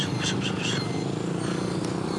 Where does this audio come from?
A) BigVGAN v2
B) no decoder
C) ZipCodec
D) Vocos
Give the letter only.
B